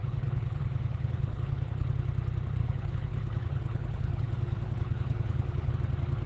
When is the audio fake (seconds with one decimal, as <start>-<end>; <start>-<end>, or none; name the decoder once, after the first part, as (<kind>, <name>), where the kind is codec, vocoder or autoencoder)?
0.0-1.9 (codec, HILCodec); 2.6-5.7